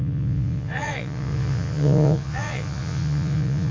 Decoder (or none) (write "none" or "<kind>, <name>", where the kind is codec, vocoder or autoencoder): vocoder, Vocos